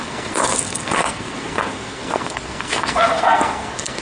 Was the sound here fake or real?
fake